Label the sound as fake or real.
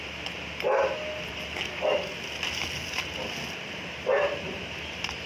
real